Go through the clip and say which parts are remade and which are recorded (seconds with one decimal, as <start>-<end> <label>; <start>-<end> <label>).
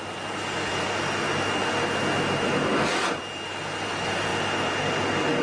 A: 0.0-5.4 recorded